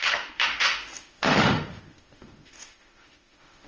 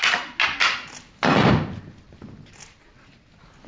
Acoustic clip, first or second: second